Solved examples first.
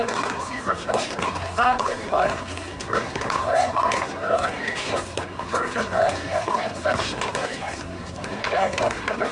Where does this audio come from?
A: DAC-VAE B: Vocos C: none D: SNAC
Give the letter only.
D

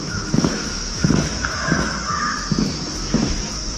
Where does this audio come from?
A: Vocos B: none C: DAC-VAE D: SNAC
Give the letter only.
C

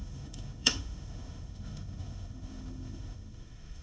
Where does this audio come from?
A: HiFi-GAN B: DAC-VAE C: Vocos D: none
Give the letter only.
B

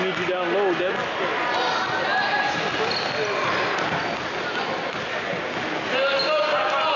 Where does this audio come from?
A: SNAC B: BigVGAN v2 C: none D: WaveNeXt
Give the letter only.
C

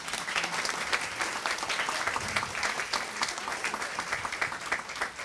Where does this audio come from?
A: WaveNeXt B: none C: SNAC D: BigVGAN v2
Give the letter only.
B